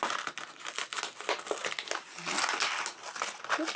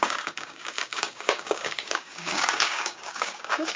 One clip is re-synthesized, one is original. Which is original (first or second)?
first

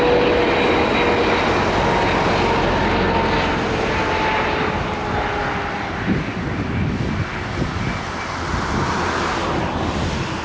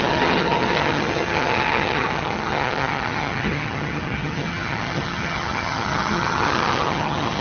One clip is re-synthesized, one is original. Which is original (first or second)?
first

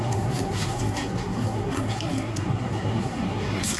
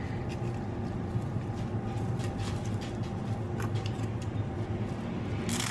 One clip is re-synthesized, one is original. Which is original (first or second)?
second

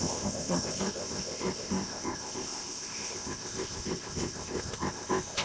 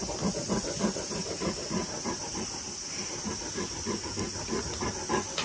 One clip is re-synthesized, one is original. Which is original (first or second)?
second